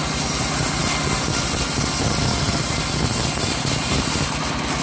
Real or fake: real